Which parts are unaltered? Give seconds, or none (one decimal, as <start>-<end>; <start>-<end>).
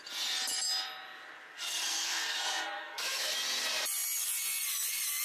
0.0-1.5; 3.3-5.2